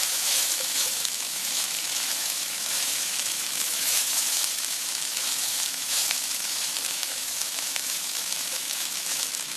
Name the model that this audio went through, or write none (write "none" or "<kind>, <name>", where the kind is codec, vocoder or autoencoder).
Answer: autoencoder, DAC-VAE